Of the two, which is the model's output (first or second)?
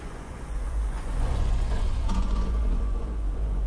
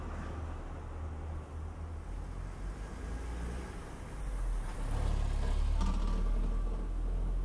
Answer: first